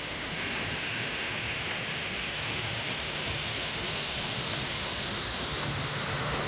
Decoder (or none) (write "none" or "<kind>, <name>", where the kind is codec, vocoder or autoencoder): autoencoder, DAC-VAE